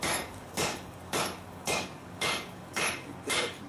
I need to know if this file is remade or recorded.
remade